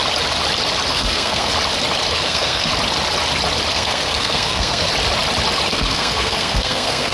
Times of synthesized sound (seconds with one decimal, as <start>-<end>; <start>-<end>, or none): 0.9-1.5; 2.1-2.7; 3.7-4.9; 5.7-7.1